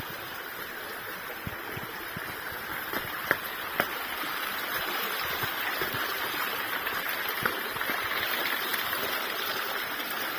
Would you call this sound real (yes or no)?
no